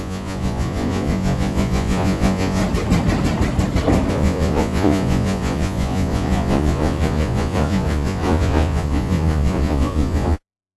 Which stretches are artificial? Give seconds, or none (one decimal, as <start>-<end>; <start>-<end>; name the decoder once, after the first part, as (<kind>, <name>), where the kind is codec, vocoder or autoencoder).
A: 0.0-2.6 (vocoder, Vocos); 4.1-10.8